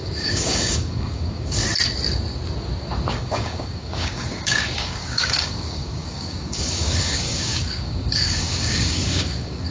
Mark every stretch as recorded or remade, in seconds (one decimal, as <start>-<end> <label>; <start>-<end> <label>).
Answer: 0.0-1.6 remade; 1.6-3.1 recorded; 3.1-9.7 remade